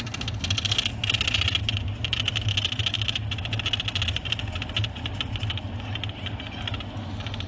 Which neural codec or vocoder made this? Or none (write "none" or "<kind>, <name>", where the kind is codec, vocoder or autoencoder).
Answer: none